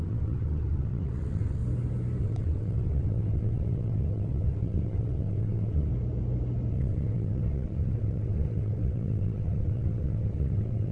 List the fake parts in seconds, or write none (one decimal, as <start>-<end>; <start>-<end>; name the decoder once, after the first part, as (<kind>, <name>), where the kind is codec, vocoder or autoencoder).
0.0-1.6 (vocoder, WaveNeXt); 2.2-5.9; 6.7-10.9